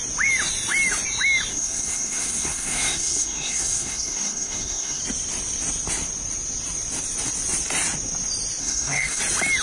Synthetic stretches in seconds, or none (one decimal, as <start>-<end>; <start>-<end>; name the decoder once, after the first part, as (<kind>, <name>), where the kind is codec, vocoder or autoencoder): 1.5-5.0 (codec, SNAC); 8.6-9.2